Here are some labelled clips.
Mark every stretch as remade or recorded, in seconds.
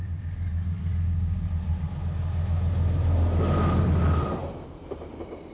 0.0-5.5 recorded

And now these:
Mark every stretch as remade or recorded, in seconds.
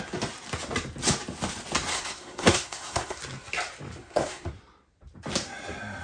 0.0-1.9 recorded; 1.9-3.2 remade; 3.2-4.0 recorded; 4.0-4.5 remade; 4.5-6.0 recorded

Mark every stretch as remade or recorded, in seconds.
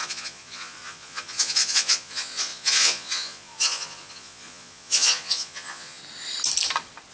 0.0-6.0 remade; 6.0-7.1 recorded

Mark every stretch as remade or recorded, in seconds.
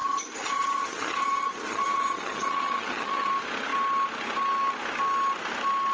0.0-3.3 remade; 3.3-5.9 recorded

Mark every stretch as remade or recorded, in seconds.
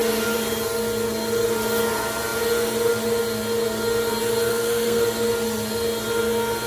0.0-4.5 recorded; 4.5-5.0 remade; 5.0-6.7 recorded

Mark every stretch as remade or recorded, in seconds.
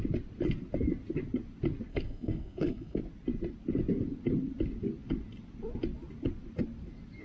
0.0-1.9 recorded; 1.9-3.0 remade; 3.0-7.2 recorded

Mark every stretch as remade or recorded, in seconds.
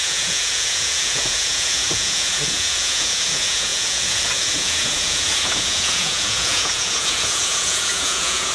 0.0-8.5 remade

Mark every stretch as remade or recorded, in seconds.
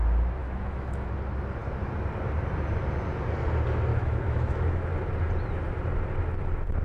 0.0-0.4 recorded; 0.4-1.1 remade; 1.1-3.9 recorded; 3.9-4.9 remade; 4.9-6.8 recorded